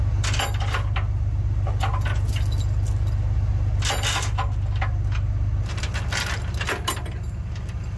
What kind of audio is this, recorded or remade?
recorded